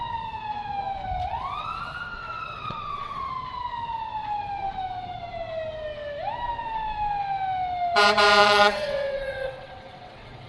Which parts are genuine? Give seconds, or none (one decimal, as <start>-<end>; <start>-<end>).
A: 0.0-1.3; 3.3-8.4